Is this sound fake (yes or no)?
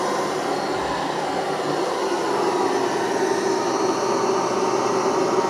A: no